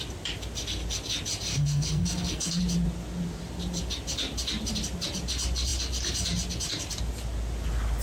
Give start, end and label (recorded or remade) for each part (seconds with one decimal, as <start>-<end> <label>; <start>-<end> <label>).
0.0-1.5 recorded; 1.5-2.6 remade; 2.6-8.0 recorded